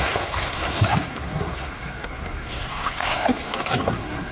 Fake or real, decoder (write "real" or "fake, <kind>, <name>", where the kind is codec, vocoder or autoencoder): fake, codec, SNAC